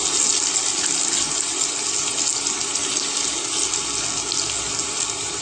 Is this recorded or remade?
recorded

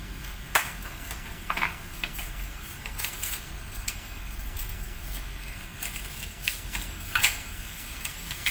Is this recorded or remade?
remade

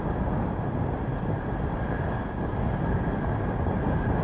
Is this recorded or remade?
recorded